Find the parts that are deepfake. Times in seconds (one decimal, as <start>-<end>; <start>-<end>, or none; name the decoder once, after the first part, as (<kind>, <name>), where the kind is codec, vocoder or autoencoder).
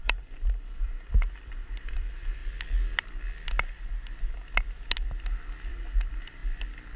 0.0-2.4 (vocoder, BigVGAN v2); 5.7-6.4